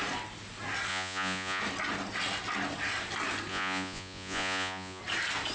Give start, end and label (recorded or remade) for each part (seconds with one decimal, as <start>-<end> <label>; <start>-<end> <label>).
0.0-0.9 recorded; 0.9-1.6 remade; 1.6-3.5 recorded; 3.5-5.0 remade; 5.0-5.5 recorded